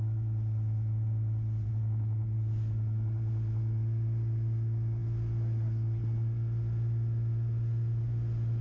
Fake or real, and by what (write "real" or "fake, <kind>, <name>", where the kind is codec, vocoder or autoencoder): real